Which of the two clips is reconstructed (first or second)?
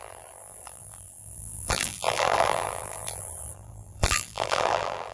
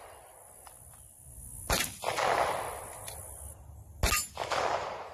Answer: first